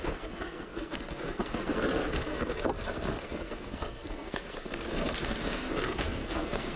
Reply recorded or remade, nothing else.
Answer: remade